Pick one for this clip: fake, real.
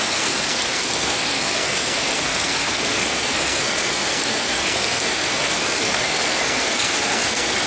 fake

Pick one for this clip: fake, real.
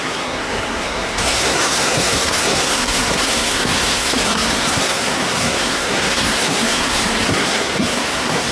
fake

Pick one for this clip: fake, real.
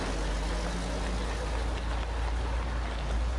real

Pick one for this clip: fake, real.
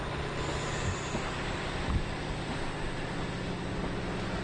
real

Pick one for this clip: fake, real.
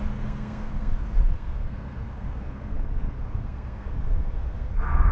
fake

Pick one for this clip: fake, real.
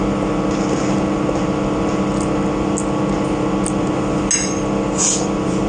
real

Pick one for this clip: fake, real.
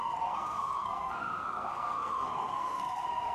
fake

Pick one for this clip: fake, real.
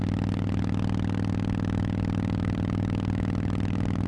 real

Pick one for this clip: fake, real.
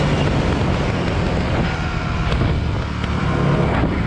real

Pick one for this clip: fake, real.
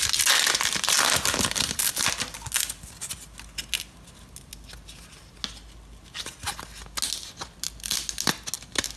real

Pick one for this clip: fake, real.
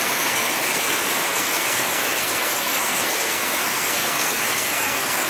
fake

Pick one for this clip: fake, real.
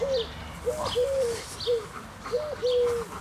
real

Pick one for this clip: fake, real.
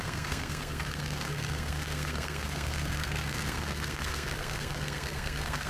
fake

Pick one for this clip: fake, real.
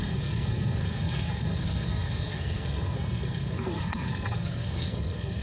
fake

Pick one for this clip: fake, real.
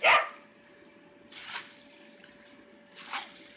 real